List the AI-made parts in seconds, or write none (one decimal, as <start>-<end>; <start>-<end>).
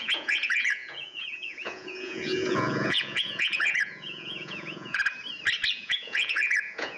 0.0-5.0; 5.7-7.0